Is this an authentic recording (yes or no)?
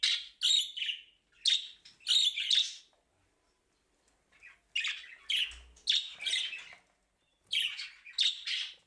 yes